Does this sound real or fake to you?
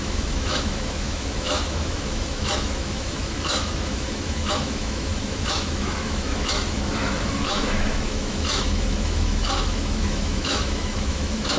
fake